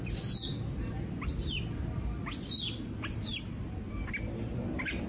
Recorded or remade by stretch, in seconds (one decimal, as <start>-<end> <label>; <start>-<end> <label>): 0.0-3.3 recorded; 3.3-4.1 remade; 4.1-5.1 recorded